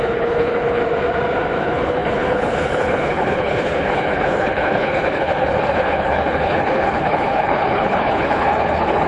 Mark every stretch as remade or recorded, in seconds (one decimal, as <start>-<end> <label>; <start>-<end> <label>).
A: 0.0-0.8 remade; 0.8-1.6 recorded; 1.6-9.1 remade